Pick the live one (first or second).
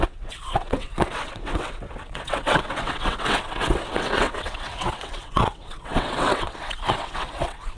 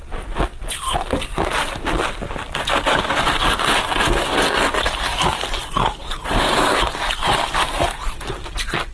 second